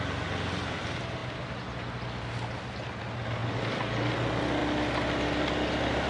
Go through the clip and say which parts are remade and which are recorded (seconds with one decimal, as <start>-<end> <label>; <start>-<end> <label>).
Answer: 0.0-6.1 recorded